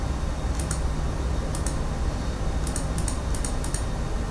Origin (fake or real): real